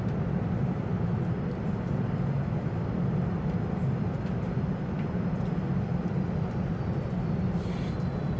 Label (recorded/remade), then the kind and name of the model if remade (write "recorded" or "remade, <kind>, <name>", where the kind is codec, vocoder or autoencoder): recorded